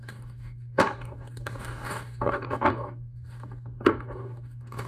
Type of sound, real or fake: fake